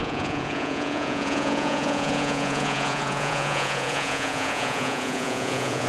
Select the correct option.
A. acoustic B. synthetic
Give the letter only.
B